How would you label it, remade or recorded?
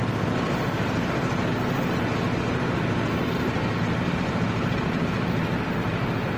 recorded